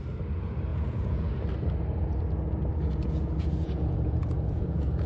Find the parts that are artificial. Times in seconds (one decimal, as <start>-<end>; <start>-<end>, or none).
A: 0.7-1.3; 2.8-5.1